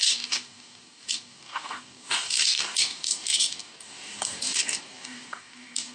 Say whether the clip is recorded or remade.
remade